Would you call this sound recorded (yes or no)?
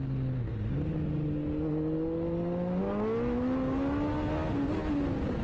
yes